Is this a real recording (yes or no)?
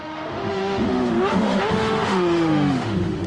no